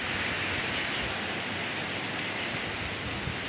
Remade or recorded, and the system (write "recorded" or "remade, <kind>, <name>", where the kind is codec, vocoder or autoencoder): recorded